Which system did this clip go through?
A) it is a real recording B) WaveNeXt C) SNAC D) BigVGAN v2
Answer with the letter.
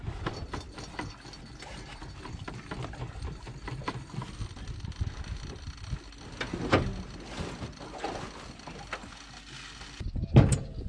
A